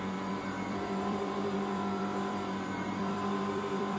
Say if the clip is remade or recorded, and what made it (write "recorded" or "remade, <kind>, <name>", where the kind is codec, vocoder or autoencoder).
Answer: remade, vocoder, BigVGAN v2